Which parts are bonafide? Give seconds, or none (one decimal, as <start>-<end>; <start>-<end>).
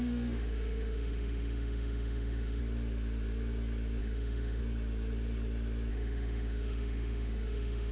2.6-4.0; 4.6-5.9